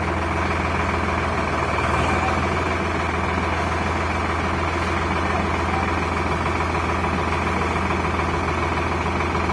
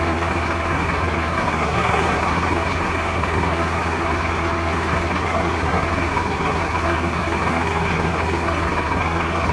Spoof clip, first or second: second